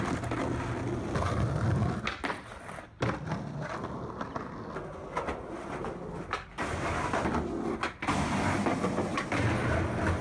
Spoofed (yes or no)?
no